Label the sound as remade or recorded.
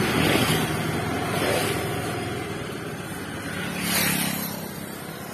recorded